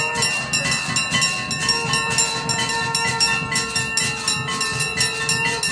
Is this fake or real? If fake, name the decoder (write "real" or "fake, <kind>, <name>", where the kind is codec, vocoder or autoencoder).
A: real